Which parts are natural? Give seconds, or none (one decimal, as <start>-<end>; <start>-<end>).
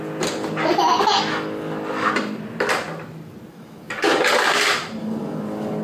0.0-0.8; 2.1-3.5; 4.2-5.0